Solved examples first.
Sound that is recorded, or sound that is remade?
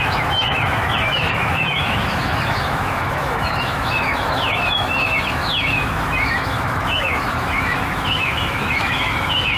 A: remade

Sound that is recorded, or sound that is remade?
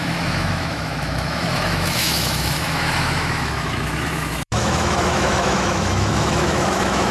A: remade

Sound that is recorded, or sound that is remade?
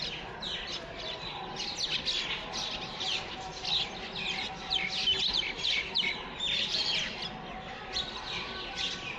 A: recorded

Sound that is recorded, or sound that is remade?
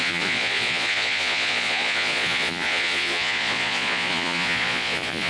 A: remade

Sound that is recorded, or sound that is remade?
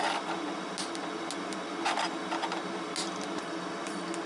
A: recorded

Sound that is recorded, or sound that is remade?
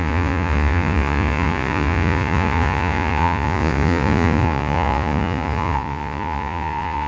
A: remade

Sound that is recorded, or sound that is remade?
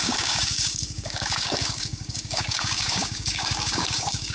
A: remade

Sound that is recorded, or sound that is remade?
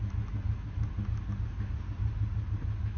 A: recorded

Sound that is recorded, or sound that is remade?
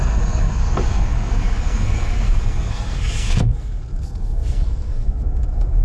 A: remade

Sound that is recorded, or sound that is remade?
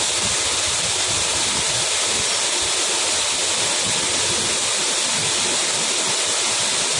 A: recorded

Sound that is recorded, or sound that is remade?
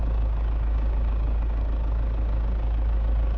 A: remade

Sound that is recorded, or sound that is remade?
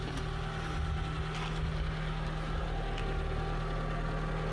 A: recorded